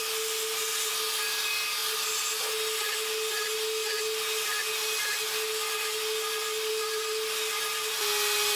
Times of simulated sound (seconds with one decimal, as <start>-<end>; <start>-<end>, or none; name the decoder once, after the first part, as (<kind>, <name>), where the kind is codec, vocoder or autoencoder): none